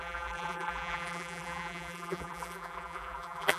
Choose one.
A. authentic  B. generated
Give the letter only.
B